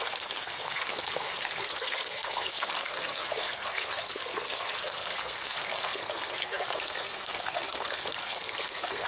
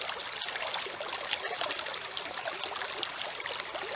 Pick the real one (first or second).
second